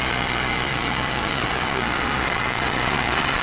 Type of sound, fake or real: fake